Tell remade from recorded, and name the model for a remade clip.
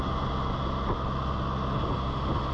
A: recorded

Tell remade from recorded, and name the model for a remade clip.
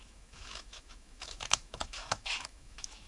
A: remade, autoencoder, DAC-VAE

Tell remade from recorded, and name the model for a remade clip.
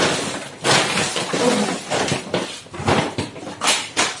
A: recorded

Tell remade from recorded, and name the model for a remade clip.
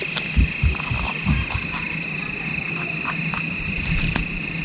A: recorded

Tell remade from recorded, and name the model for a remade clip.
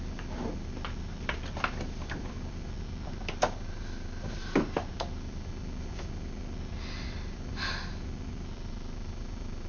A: remade, vocoder, BigVGAN v2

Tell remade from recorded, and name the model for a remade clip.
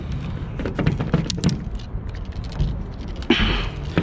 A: recorded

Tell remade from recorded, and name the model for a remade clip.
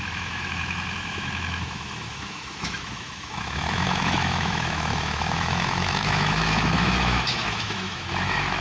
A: remade, autoencoder, DAC-VAE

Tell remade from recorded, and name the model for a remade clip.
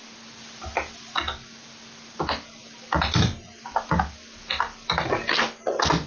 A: recorded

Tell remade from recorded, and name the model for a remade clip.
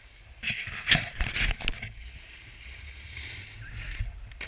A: recorded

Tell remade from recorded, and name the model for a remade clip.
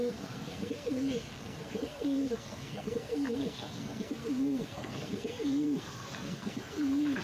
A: remade, codec, SNAC